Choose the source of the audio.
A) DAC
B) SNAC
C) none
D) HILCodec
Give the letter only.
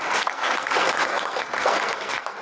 B